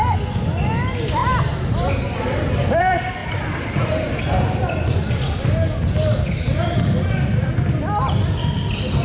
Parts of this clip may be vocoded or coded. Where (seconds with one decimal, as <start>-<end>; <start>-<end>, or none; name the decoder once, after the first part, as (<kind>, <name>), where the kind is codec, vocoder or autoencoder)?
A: none